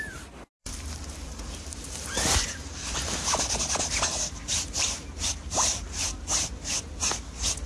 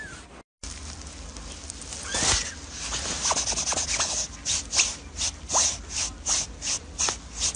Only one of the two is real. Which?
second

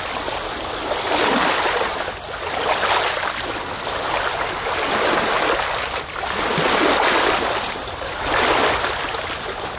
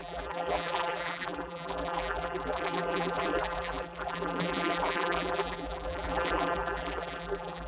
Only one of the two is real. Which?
first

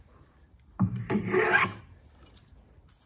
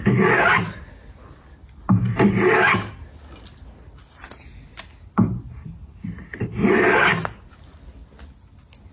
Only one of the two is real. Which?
second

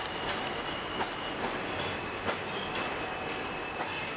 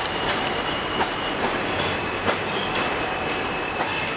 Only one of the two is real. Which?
first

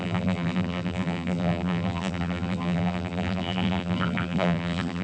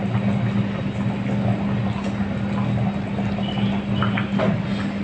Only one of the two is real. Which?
second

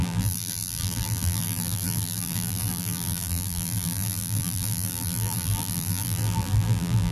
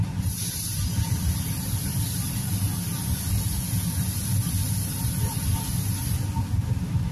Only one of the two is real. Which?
second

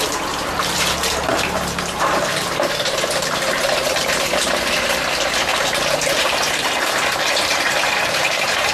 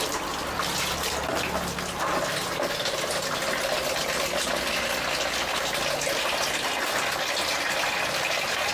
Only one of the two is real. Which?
second